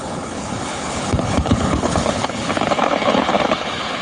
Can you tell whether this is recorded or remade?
remade